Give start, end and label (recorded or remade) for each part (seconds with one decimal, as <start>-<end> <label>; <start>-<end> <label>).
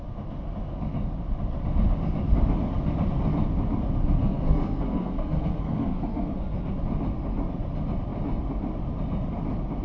0.0-4.2 recorded; 4.2-6.7 remade; 6.7-9.8 recorded